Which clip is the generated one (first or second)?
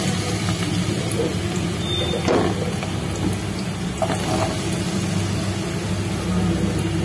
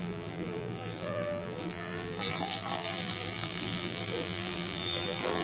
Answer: second